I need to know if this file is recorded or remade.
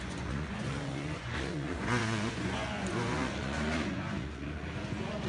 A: remade